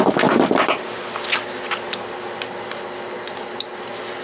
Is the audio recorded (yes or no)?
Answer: yes